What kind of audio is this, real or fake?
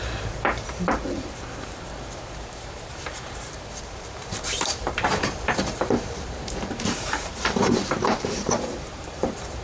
fake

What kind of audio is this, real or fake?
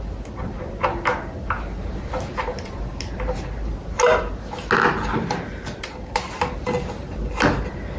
real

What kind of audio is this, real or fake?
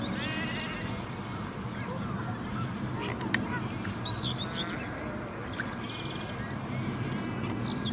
real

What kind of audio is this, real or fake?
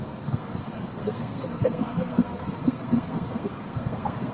fake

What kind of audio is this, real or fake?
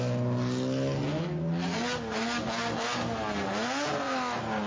real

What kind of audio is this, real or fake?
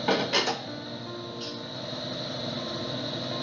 real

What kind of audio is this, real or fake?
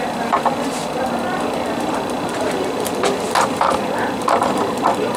real